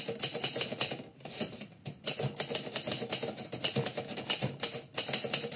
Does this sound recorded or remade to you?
remade